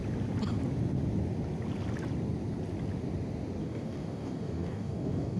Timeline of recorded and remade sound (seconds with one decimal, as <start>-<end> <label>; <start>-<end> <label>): 0.0-3.6 recorded; 3.6-5.4 remade